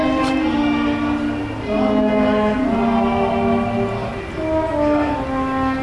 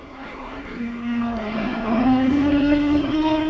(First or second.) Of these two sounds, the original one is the first